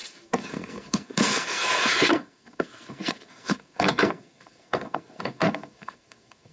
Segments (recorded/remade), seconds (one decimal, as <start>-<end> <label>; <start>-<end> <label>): 0.0-6.5 remade